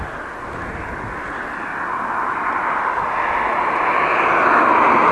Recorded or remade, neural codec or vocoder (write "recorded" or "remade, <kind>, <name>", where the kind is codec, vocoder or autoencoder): recorded